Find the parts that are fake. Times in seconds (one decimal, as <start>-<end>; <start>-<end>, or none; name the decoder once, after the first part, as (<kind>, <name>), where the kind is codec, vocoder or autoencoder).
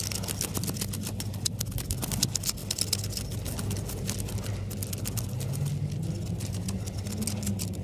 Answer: none